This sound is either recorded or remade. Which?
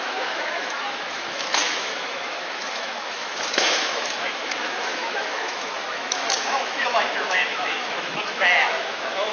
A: remade